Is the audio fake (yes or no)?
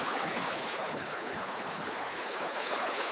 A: yes